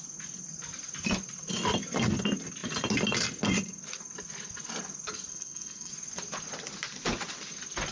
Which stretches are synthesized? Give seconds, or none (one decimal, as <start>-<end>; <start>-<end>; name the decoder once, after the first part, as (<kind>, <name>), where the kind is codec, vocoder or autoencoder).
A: 5.3-5.9 (codec, SNAC)